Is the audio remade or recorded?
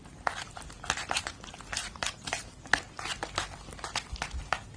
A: recorded